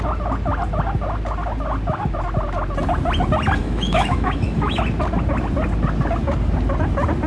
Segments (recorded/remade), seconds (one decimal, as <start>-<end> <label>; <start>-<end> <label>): 0.0-3.6 recorded; 3.6-4.8 remade; 4.8-7.3 recorded